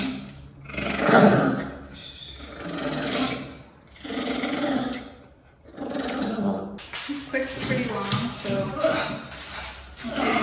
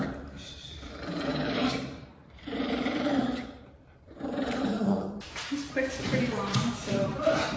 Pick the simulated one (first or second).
second